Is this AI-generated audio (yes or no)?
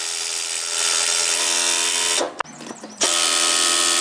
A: no